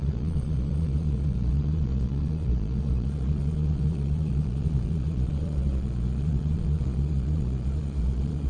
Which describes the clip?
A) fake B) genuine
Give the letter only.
A